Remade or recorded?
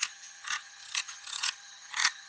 remade